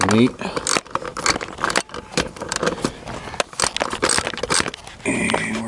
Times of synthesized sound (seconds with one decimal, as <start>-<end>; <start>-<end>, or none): none